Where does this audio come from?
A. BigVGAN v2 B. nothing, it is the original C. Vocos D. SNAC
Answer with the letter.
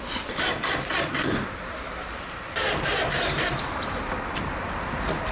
A